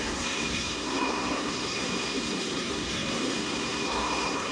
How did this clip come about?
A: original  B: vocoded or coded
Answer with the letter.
B